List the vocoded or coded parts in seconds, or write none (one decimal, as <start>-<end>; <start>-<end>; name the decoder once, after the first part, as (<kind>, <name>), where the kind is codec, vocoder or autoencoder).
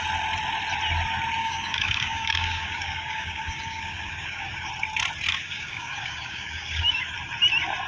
1.4-4.7 (codec, DAC); 5.3-7.0